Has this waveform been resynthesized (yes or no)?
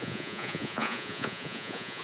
yes